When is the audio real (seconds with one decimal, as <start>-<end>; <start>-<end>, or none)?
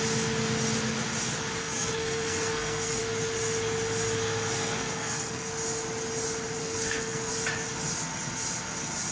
0.0-1.6; 3.0-4.6; 5.5-6.6; 7.3-9.1